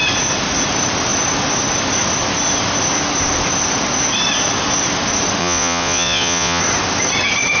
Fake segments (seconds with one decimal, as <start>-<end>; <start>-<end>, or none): 5.4-6.6